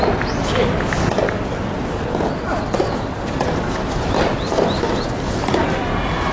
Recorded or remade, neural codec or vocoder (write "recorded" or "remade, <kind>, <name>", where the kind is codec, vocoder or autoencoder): recorded